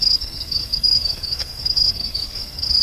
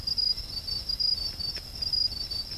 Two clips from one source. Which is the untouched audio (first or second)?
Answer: second